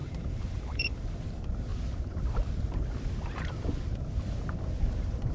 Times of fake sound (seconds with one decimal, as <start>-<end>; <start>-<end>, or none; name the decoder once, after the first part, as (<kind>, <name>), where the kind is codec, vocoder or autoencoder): 0.0-1.7 (vocoder, BigVGAN v2)